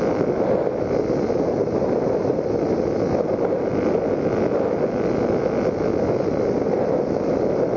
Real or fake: real